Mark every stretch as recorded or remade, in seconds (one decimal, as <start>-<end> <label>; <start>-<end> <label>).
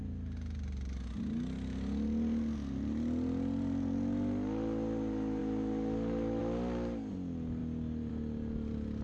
0.0-7.6 recorded; 7.6-8.1 remade; 8.1-9.0 recorded